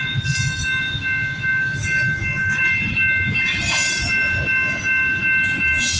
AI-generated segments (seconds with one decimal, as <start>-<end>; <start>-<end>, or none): none